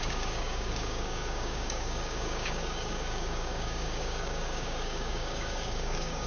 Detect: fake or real fake